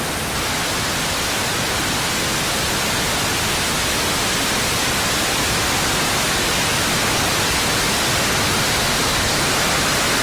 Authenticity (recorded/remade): recorded